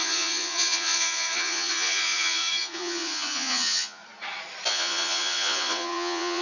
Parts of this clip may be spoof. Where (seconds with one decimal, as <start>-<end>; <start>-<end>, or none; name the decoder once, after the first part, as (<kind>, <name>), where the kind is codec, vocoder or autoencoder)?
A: 0.0-4.0 (vocoder, Vocos); 4.7-6.4